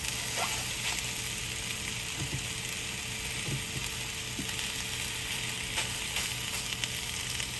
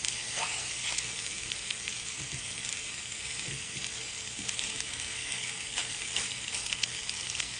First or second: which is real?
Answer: first